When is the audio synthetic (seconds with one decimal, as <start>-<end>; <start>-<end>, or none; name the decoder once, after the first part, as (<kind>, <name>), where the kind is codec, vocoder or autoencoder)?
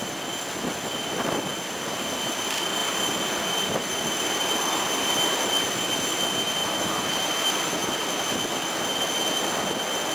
6.6-7.1 (autoencoder, DAC-VAE)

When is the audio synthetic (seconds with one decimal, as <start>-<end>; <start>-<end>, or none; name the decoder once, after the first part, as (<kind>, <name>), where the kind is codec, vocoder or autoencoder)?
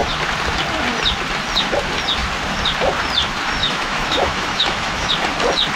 3.6-5.1 (autoencoder, DAC-VAE)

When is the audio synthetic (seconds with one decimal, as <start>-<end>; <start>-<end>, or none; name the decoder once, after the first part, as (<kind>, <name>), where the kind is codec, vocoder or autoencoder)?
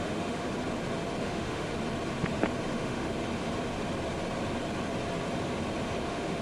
0.0-0.5 (autoencoder, DAC-VAE); 1.2-1.7; 2.7-3.1; 6.0-6.4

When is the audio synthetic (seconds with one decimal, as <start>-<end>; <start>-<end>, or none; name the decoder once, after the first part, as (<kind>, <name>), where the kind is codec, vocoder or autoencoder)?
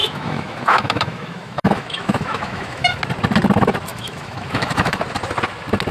0.0-3.0 (autoencoder, DAC-VAE); 3.9-5.0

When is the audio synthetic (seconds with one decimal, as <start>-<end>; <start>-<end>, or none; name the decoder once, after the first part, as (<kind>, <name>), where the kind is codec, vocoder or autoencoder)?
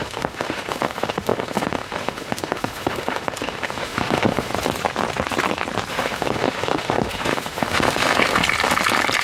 0.0-4.5 (autoencoder, DAC-VAE); 5.9-8.4